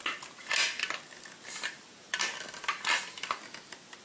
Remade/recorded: recorded